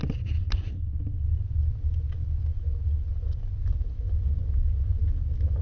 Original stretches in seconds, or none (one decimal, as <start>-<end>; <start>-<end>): 0.0-5.6